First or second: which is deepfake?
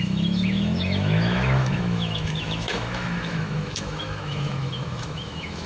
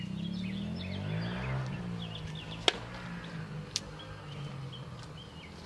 first